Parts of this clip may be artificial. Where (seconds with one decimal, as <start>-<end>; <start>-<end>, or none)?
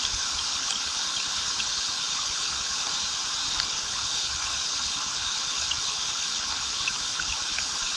0.0-2.9; 3.5-8.0